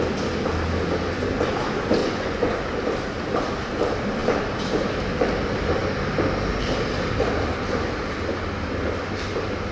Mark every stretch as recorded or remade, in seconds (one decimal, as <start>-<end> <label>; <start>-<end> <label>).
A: 0.0-2.0 recorded; 2.0-2.6 remade; 2.6-9.7 recorded